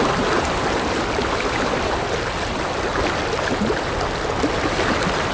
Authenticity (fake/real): real